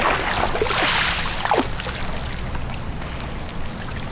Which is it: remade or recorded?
recorded